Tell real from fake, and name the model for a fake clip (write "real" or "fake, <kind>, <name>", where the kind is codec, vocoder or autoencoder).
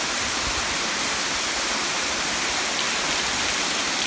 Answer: real